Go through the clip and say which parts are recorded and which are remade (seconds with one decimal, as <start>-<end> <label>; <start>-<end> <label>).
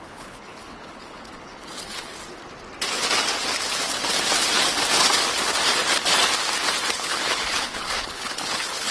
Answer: 0.0-2.1 remade; 2.1-7.0 recorded; 7.0-8.9 remade